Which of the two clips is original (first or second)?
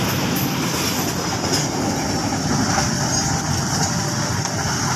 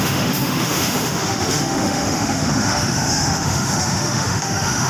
first